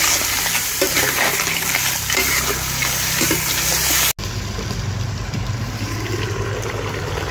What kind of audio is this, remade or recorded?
recorded